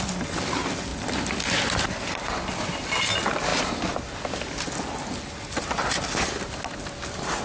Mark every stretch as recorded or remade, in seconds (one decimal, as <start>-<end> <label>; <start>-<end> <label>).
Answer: 0.0-7.4 recorded